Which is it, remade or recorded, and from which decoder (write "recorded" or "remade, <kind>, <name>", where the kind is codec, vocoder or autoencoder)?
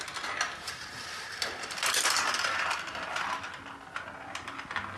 recorded